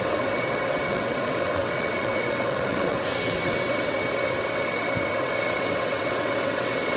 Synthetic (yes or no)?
yes